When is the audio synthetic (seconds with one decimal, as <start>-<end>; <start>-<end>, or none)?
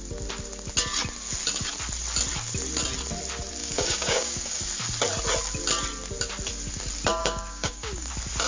3.6-4.6; 7.2-8.1